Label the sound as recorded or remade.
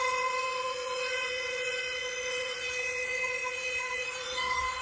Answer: remade